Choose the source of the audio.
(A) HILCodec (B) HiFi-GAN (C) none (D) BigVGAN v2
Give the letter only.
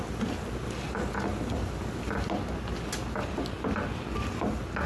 C